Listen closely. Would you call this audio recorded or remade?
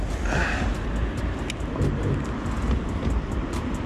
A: recorded